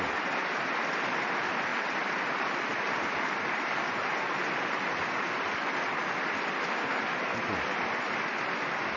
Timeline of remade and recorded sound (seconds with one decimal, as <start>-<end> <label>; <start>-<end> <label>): 0.0-9.0 recorded